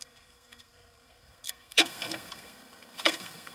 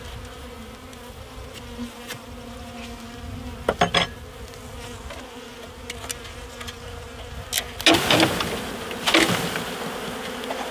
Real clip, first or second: second